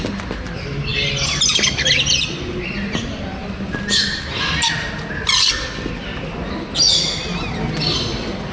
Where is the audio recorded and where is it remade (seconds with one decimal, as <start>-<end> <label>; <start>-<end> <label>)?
0.0-8.5 recorded